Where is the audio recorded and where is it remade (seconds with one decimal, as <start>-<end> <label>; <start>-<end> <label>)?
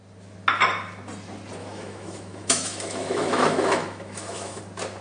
0.0-1.6 recorded; 1.6-4.6 remade; 4.6-5.0 recorded